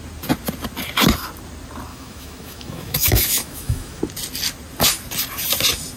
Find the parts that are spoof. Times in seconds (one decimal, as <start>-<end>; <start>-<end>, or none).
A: 1.9-4.0